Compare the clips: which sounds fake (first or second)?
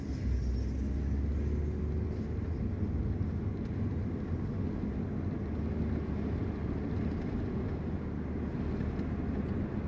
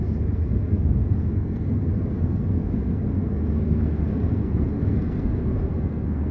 second